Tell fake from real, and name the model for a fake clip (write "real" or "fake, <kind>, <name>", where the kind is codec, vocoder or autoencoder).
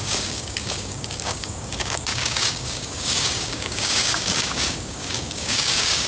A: fake, codec, DAC